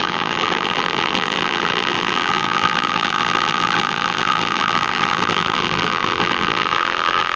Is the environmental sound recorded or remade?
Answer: remade